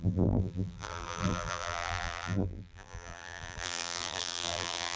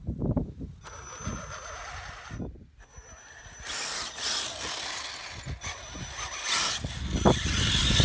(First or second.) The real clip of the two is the second